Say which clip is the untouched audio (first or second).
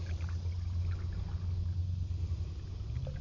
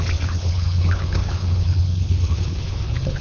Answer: first